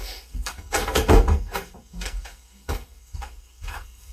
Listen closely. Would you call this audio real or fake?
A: fake